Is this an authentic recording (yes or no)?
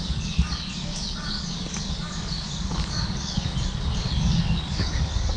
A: no